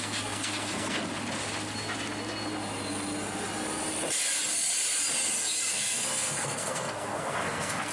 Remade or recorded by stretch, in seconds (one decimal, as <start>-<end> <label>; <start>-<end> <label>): 0.0-1.0 remade; 1.0-5.7 recorded; 5.7-7.9 remade

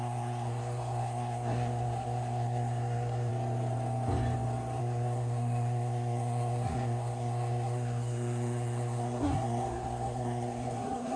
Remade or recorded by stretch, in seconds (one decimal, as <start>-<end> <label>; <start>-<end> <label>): 0.0-3.3 remade; 3.3-4.8 recorded; 4.8-11.2 remade

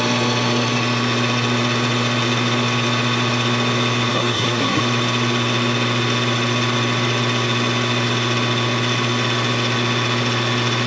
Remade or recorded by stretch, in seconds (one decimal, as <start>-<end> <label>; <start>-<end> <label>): 0.0-4.1 recorded; 4.1-4.8 remade; 4.8-10.9 recorded